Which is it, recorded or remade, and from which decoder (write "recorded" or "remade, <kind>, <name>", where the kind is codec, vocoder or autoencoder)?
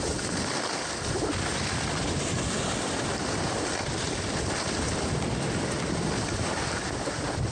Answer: recorded